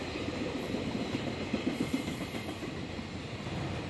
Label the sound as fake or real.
fake